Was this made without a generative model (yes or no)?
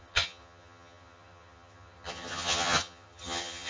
no